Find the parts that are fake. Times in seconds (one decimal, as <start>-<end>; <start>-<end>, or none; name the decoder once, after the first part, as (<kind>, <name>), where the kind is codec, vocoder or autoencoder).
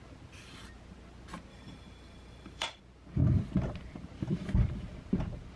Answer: 1.5-2.8 (vocoder, BigVGAN v2)